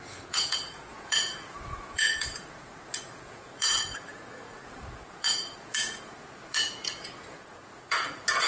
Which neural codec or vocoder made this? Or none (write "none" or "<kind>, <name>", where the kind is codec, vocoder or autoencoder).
vocoder, Vocos